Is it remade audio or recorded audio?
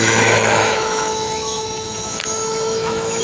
remade